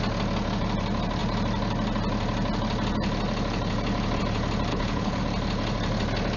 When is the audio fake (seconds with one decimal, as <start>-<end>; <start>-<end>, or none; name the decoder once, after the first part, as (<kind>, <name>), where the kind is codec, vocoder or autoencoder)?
4.7-5.2 (codec, HILCodec)